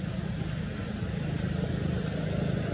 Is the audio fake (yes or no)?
no